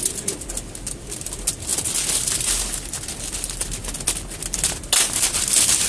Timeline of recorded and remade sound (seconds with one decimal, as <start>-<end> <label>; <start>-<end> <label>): 0.0-1.7 remade; 1.7-5.2 recorded; 5.2-5.9 remade